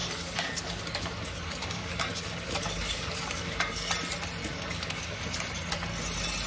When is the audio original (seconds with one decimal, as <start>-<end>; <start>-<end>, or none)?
3.9-4.4; 5.2-6.5